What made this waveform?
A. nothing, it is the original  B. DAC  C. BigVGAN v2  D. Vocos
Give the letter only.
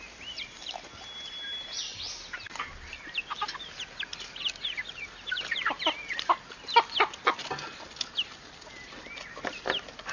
A